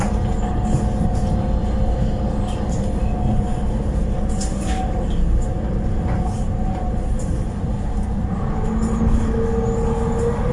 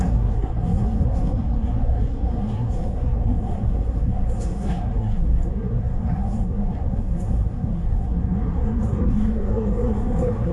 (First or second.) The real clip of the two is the first